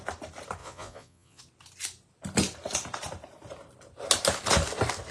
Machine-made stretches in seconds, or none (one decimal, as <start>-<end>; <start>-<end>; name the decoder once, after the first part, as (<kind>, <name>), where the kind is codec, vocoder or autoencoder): 0.6-1.4 (vocoder, Vocos)